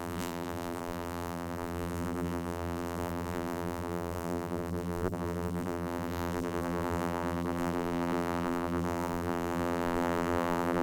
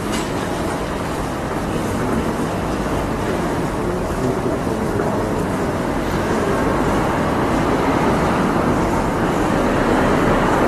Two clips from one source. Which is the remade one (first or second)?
first